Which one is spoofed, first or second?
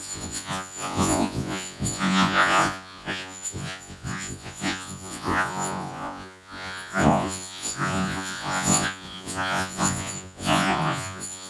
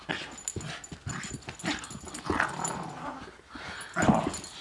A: first